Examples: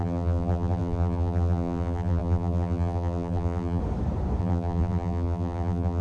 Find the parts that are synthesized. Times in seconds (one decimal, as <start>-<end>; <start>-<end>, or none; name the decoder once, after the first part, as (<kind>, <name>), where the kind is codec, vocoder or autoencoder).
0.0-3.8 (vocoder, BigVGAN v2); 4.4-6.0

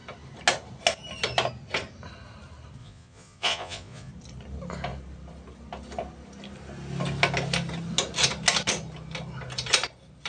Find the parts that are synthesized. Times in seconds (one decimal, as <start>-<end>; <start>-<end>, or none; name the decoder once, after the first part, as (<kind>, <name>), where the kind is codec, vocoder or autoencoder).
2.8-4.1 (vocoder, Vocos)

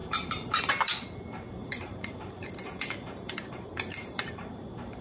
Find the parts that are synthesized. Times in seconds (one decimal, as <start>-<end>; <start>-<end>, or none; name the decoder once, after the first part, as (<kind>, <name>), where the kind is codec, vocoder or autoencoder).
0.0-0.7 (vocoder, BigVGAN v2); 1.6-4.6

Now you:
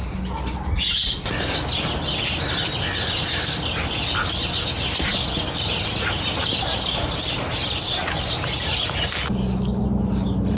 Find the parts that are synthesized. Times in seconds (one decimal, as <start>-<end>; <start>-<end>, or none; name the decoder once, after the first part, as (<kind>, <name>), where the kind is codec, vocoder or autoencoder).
none